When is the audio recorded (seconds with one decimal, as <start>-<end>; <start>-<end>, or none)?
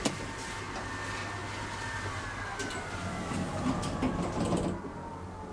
0.0-5.5